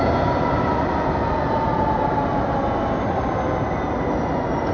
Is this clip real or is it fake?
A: real